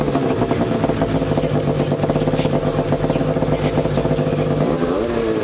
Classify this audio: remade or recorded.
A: recorded